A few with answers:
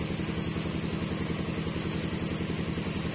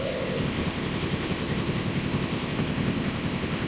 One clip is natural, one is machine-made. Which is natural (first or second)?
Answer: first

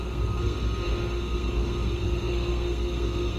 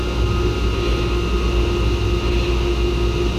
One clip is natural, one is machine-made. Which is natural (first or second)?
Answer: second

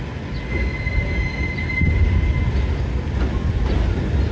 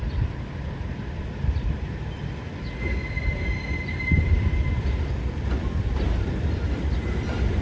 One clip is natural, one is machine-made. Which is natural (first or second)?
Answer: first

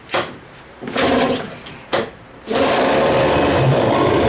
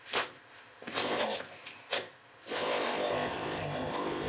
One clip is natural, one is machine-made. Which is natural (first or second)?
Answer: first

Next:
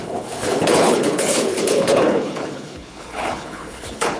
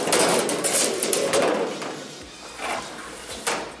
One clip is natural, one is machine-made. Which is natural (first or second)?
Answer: second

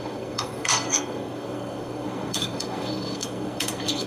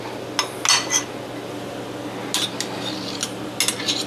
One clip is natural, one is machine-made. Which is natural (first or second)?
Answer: second